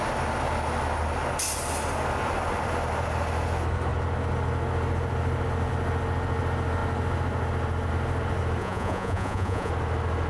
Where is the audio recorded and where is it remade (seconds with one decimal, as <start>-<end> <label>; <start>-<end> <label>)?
0.0-8.6 recorded; 8.6-9.7 remade; 9.7-10.3 recorded